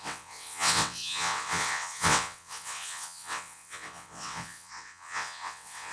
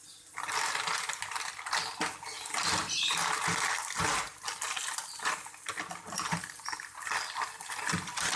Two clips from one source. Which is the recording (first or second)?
second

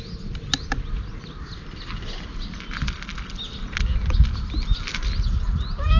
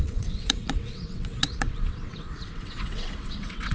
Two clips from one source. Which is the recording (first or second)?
first